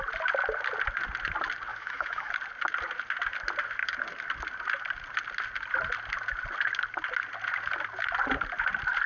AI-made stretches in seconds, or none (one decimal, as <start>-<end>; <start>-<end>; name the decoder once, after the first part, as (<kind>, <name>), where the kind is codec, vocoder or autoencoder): 1.7-2.3 (autoencoder, DAC-VAE)